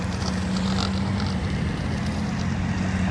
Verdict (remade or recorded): recorded